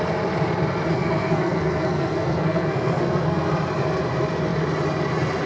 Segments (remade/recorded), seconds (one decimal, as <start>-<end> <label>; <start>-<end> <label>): 0.0-0.9 recorded; 0.9-3.5 remade; 3.5-5.5 recorded